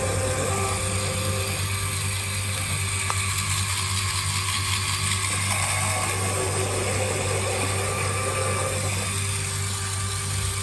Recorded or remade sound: recorded